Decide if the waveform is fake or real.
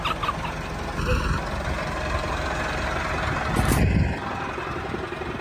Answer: real